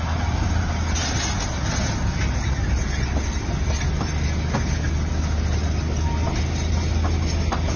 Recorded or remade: recorded